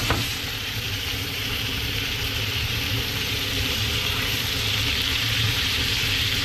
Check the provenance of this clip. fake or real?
fake